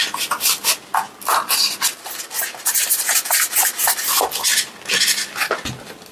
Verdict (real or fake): real